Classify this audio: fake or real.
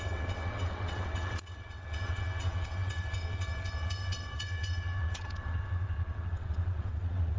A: fake